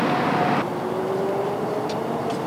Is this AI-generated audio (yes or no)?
no